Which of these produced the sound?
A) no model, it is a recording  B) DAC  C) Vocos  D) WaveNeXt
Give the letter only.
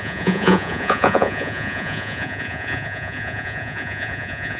C